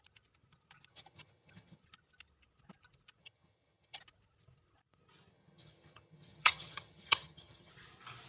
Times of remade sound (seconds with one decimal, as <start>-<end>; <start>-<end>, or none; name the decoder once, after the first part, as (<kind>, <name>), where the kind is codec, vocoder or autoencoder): 0.9-1.8 (vocoder, HiFi-GAN); 3.2-4.0; 5.3-7.7